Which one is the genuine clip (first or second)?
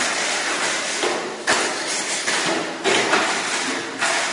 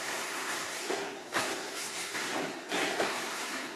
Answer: first